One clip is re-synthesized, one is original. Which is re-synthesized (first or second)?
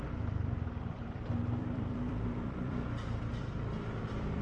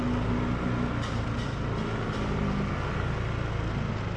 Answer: first